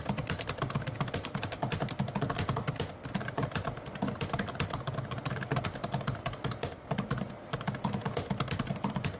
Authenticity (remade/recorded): recorded